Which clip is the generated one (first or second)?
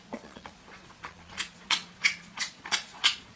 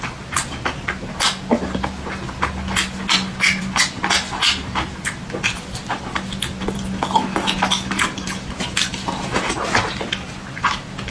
first